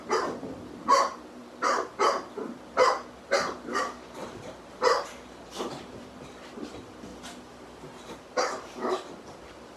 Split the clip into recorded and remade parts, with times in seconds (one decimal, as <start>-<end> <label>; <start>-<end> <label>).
0.0-7.1 remade; 7.1-8.1 recorded; 8.1-9.8 remade